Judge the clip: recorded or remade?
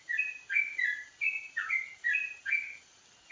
recorded